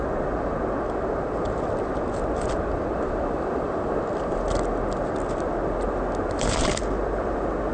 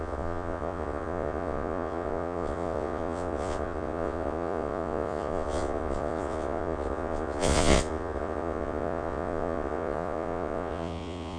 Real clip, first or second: first